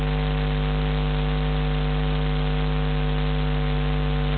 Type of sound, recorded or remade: recorded